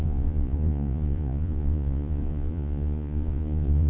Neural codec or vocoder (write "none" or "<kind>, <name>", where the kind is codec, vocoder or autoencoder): vocoder, Vocos